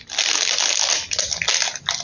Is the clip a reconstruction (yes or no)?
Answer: no